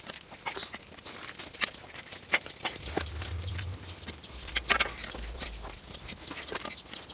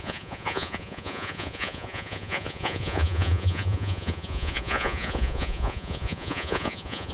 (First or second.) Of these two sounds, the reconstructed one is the second